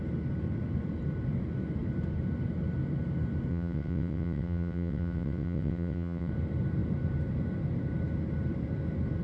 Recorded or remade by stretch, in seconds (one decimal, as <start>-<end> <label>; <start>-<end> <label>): 0.0-3.5 recorded; 3.5-6.3 remade; 6.3-9.2 recorded